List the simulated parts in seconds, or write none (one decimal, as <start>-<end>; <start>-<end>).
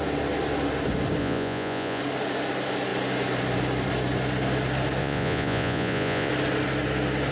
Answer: 1.2-2.0; 5.0-6.3